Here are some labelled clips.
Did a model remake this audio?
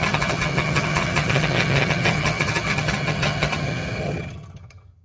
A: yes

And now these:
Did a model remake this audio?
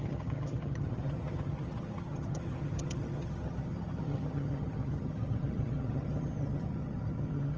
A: yes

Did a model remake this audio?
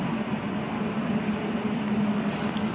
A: no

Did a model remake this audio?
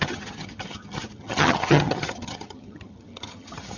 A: yes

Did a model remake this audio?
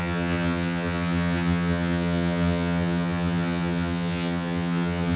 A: yes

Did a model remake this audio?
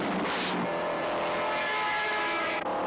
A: no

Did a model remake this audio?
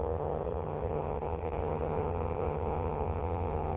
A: yes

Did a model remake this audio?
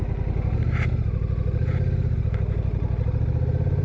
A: no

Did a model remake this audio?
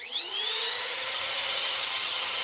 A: yes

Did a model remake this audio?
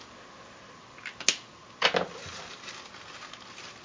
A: no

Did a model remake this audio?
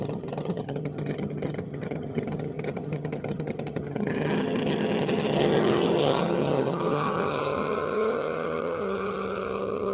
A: yes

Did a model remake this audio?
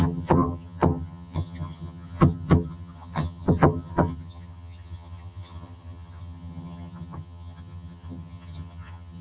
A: yes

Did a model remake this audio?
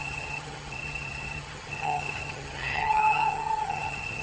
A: yes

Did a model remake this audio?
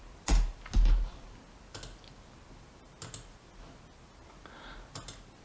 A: no